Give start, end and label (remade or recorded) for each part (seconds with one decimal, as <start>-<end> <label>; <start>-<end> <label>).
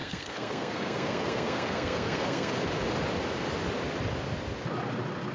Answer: 0.0-2.5 remade; 2.5-5.3 recorded